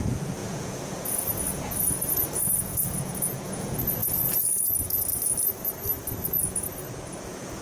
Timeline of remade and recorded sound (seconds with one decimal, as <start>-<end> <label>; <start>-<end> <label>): 0.0-5.1 remade; 5.1-6.1 recorded; 6.1-7.6 remade